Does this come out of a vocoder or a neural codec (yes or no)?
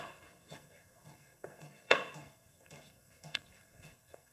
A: yes